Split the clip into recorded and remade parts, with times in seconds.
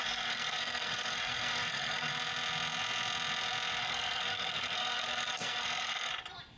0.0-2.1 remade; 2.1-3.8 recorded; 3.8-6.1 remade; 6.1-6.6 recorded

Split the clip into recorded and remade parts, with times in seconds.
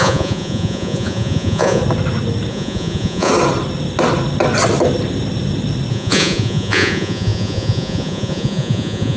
0.0-1.8 remade; 1.8-2.5 recorded; 2.5-3.3 remade; 3.3-5.9 recorded; 5.9-9.2 remade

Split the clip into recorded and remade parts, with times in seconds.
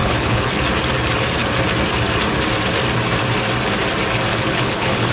0.0-0.6 remade; 0.6-4.3 recorded; 4.3-5.1 remade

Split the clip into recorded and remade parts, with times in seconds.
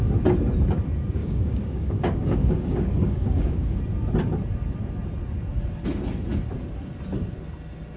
0.0-1.2 recorded; 1.2-3.8 remade; 3.8-8.0 recorded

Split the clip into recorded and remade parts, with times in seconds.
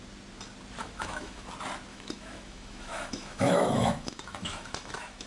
0.0-0.8 recorded; 0.8-1.5 remade; 1.5-1.9 recorded; 1.9-5.3 remade